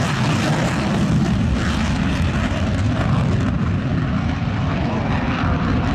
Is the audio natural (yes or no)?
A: no